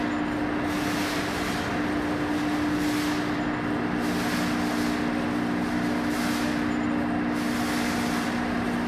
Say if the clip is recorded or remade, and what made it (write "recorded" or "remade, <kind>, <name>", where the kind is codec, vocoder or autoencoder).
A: recorded